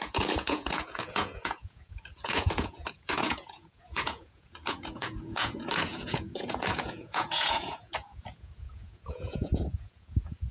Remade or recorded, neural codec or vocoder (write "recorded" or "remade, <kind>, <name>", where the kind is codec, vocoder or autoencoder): remade, vocoder, Vocos